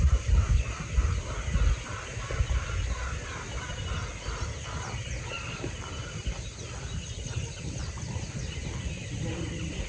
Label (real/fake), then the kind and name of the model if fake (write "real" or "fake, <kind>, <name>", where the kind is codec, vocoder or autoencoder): real